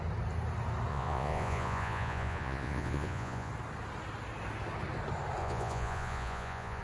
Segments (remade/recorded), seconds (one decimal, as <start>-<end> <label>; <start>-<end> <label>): 0.0-0.9 recorded; 0.9-3.5 remade; 3.5-5.4 recorded; 5.4-6.8 remade